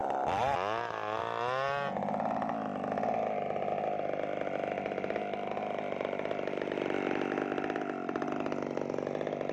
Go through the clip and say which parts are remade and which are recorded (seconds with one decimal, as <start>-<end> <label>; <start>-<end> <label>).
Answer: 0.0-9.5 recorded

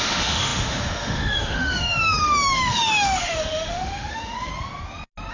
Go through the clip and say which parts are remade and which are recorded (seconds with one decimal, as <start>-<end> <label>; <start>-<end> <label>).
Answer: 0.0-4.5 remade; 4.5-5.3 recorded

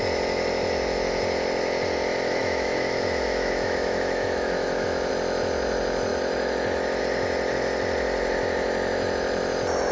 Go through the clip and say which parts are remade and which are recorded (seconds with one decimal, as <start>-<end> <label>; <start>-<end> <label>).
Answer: 0.0-2.4 recorded; 2.4-5.1 remade; 5.1-9.9 recorded